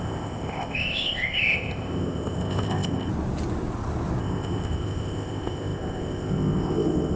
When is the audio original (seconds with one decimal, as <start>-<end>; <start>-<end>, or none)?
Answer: 3.1-4.2